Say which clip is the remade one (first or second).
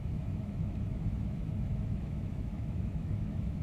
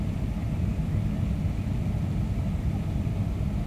first